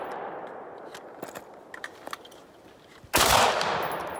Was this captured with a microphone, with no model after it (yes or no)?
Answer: yes